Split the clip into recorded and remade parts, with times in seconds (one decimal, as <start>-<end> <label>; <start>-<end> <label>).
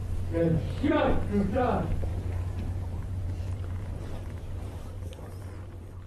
0.0-1.5 recorded; 1.5-6.1 remade